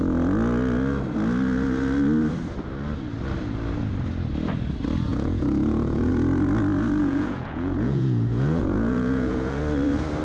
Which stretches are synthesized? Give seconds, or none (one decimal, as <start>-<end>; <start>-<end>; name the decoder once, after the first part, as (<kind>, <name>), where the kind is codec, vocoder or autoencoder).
5.1-6.1 (vocoder, Vocos); 7.0-9.6